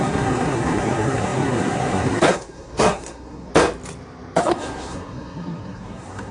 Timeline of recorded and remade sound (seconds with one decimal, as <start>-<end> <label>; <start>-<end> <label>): 0.0-3.5 remade; 3.5-4.4 recorded; 4.4-6.3 remade